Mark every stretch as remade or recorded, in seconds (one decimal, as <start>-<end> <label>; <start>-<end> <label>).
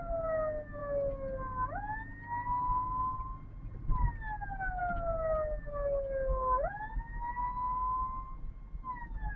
0.0-9.4 recorded